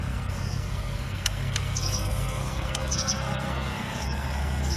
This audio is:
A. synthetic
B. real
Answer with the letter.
A